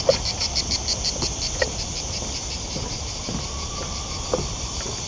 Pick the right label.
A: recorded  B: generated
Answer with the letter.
B